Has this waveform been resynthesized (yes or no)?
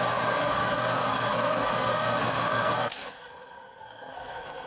yes